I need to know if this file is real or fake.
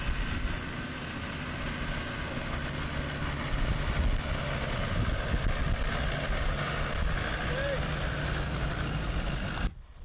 real